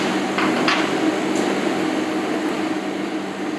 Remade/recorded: recorded